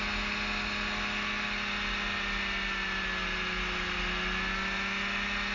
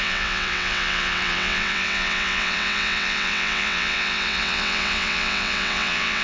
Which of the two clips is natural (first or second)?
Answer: first